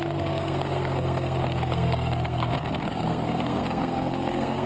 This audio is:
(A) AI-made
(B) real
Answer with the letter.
A